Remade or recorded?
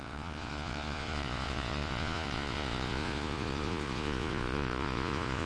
remade